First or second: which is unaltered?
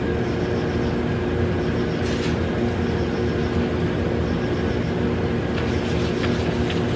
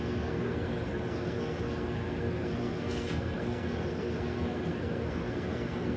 first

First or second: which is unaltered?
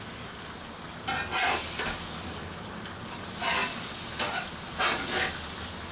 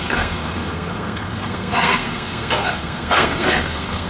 first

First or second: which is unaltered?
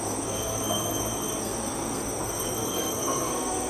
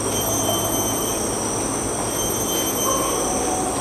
second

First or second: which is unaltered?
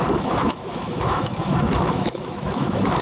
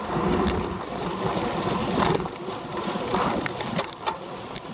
second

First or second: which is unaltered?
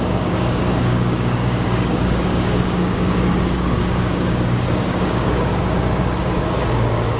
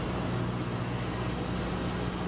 second